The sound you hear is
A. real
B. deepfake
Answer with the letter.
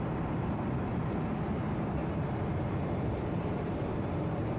A